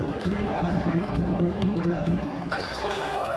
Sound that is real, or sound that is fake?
fake